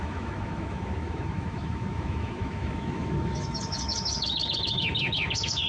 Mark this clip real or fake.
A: fake